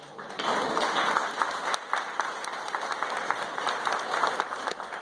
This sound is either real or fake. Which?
real